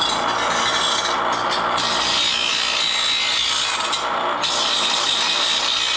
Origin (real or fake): real